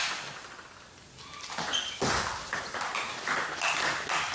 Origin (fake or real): real